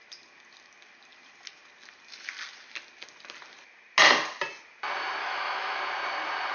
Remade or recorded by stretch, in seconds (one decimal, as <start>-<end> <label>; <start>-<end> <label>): 0.0-5.2 recorded; 5.2-5.8 remade; 5.8-6.5 recorded

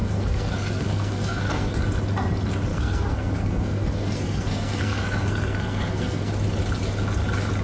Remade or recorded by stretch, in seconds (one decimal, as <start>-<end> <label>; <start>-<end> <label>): 0.0-1.8 remade; 1.8-2.7 recorded; 2.7-6.3 remade; 6.3-7.6 recorded

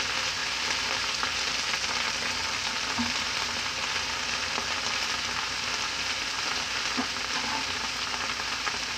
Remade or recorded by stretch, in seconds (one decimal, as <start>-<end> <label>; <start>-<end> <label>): 0.0-9.0 recorded